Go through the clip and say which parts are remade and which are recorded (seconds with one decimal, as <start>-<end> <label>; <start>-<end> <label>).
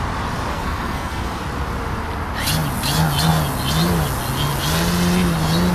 0.0-0.5 recorded; 0.5-1.4 remade; 1.4-5.7 recorded